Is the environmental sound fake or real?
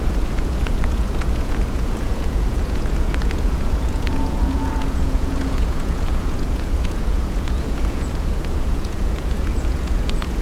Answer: fake